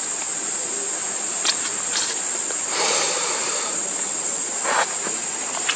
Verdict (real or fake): real